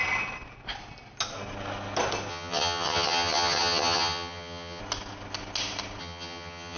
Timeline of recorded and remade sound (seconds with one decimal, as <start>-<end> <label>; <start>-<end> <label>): 0.0-2.3 recorded; 2.3-4.8 remade; 4.8-6.0 recorded; 6.0-6.8 remade